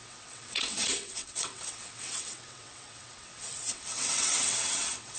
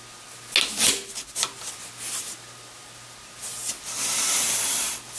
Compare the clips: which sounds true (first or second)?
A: second